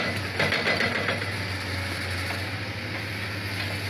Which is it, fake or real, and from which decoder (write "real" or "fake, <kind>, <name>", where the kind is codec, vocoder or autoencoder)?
real